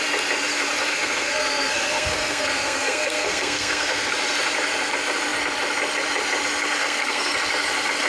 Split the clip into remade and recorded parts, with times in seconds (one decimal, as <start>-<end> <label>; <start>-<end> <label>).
0.0-0.9 recorded; 0.9-4.1 remade; 4.1-6.8 recorded; 6.8-7.3 remade; 7.3-8.1 recorded